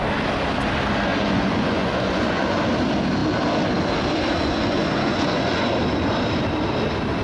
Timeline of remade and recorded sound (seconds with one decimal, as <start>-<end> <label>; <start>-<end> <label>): 0.0-1.1 recorded; 1.1-2.6 remade; 2.6-4.3 recorded; 4.3-5.7 remade; 5.7-7.2 recorded